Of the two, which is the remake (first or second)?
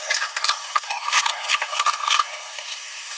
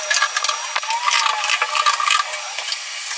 first